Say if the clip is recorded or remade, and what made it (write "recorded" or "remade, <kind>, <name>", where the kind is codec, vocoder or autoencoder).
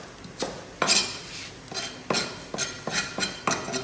recorded